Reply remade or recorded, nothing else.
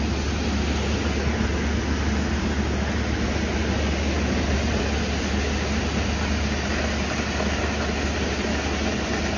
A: recorded